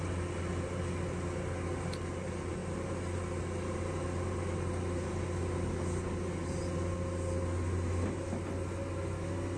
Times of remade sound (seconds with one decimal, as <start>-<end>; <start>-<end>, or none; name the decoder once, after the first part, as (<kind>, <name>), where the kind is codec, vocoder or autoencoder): none